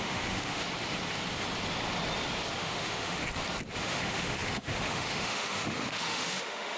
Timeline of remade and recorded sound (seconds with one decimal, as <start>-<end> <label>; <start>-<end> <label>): 0.0-0.6 remade; 0.6-2.6 recorded; 2.6-3.2 remade; 3.2-3.8 recorded; 3.8-6.8 remade

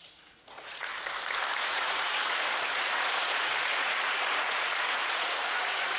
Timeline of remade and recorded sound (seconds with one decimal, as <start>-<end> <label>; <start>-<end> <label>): 0.0-0.9 remade; 0.9-1.6 recorded; 1.6-6.0 remade

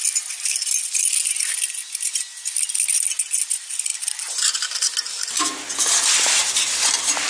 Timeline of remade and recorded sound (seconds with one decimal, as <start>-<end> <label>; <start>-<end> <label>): 0.0-7.3 recorded

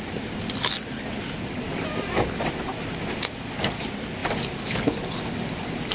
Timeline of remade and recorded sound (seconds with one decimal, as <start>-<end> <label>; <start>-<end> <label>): 0.0-4.2 recorded; 4.2-5.5 remade; 5.5-5.9 recorded

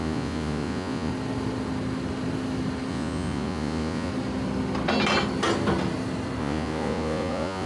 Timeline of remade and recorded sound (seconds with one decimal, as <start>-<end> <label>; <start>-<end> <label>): 0.0-1.1 remade; 1.1-2.9 recorded; 2.9-4.1 remade; 4.1-6.4 recorded; 6.4-7.7 remade

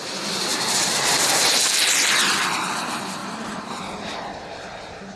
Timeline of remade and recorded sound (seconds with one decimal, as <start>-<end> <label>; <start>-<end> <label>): 0.0-0.5 recorded; 0.5-2.1 remade; 2.1-3.2 recorded; 3.2-3.8 remade; 3.8-5.2 recorded

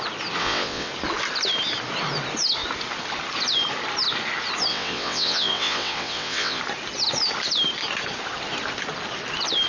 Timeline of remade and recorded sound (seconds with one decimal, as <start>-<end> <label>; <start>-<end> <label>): 0.0-0.4 recorded; 0.4-0.9 remade; 0.9-4.7 recorded; 4.7-6.6 remade; 6.6-9.7 recorded